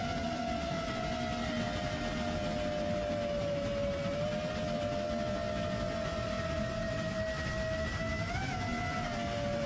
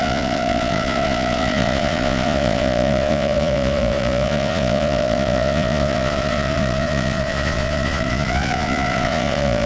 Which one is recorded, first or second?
first